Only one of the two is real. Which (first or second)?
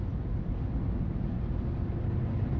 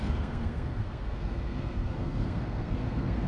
first